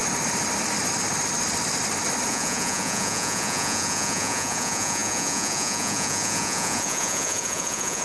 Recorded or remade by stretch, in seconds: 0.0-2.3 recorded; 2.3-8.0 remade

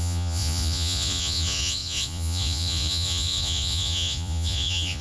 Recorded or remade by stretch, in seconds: 0.0-5.0 remade

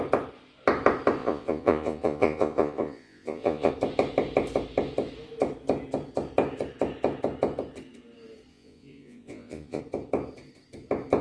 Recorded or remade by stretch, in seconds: 0.0-1.2 recorded; 1.2-3.7 remade; 3.7-8.5 recorded; 8.5-9.8 remade; 9.8-11.2 recorded

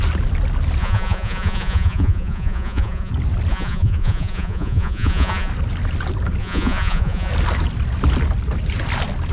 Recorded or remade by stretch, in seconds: 0.0-0.8 recorded; 0.8-3.1 remade; 3.1-3.5 recorded; 3.5-5.5 remade; 5.5-6.4 recorded; 6.4-7.3 remade; 7.3-9.3 recorded

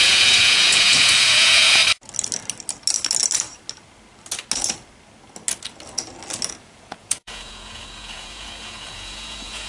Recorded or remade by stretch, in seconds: 0.0-1.8 remade; 1.8-6.6 recorded; 6.6-9.7 remade

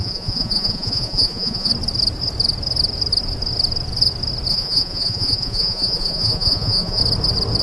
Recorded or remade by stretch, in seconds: 0.0-1.7 remade; 1.7-4.5 recorded; 4.5-7.0 remade; 7.0-7.6 recorded

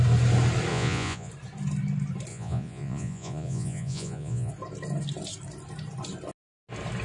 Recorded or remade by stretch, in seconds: 0.0-0.7 recorded; 0.7-1.3 remade; 1.3-2.3 recorded; 2.3-4.5 remade; 4.5-7.0 recorded

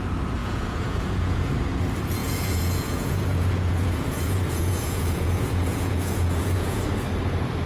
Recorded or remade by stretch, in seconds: 0.0-0.4 recorded; 0.4-1.5 remade; 1.5-2.2 recorded; 2.2-6.8 remade; 6.8-7.7 recorded